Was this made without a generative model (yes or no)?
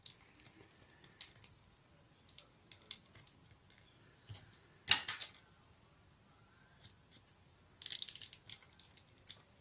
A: yes